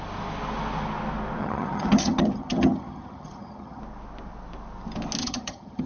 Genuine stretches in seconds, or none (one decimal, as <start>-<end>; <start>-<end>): 0.0-1.4; 3.8-5.2